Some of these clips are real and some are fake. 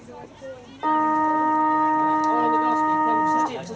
real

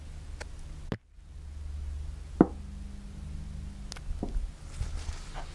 real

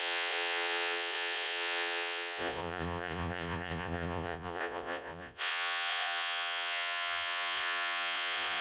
fake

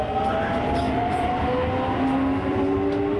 real